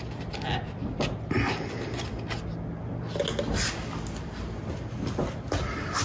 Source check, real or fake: real